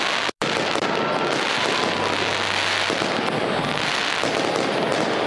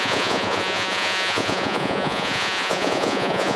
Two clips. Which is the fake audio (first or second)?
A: second